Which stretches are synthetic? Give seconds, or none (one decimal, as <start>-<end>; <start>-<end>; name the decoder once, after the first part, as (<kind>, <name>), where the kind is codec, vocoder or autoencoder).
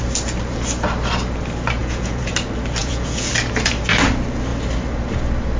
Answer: 1.8-2.3 (vocoder, Vocos); 2.8-3.3